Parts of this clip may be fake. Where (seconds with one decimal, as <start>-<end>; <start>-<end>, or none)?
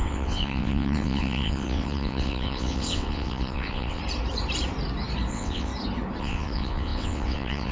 0.0-4.0; 5.3-5.7; 6.2-7.7